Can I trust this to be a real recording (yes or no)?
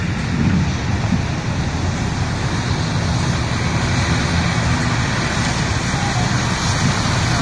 yes